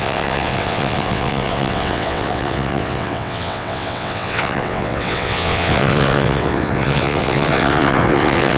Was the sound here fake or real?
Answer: fake